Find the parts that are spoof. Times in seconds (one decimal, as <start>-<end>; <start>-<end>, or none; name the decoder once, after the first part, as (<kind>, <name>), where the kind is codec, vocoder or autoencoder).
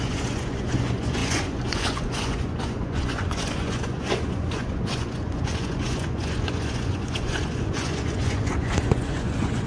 0.0-9.7 (vocoder, Vocos)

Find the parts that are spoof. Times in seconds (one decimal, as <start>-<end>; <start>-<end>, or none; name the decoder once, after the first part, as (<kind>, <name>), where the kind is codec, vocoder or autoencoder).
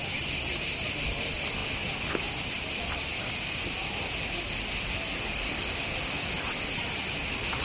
0.0-1.6 (vocoder, BigVGAN v2); 2.4-7.6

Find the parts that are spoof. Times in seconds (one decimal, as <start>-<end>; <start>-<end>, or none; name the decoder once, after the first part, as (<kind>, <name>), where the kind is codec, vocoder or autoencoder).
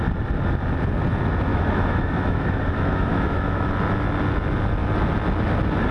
1.5-3.7 (autoencoder, DAC-VAE)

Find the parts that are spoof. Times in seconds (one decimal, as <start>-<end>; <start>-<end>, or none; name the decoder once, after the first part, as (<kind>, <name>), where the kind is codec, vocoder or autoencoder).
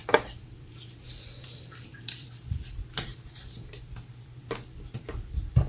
0.0-2.6 (vocoder, BigVGAN v2); 3.1-3.7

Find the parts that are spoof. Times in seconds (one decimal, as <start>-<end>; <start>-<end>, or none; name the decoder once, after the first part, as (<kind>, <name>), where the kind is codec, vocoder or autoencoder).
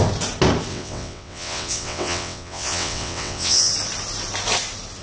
0.7-3.7 (vocoder, WaveNeXt)